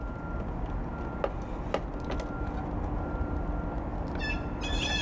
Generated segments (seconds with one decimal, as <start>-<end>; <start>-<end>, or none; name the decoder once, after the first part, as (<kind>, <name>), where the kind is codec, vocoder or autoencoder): none